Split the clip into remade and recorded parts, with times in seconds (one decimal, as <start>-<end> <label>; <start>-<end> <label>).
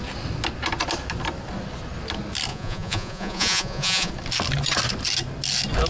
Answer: 0.0-2.5 recorded; 2.5-4.1 remade; 4.1-5.9 recorded